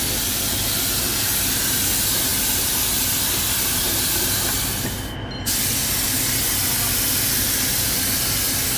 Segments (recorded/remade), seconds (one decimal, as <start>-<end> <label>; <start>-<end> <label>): 0.0-8.8 recorded